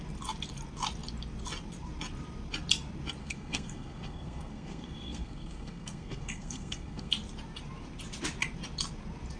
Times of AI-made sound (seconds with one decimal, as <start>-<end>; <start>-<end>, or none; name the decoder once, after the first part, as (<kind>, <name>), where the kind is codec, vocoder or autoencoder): 3.2-7.1 (codec, SNAC)